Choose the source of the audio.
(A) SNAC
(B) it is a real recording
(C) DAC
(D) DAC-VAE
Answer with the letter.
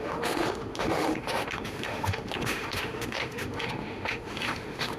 D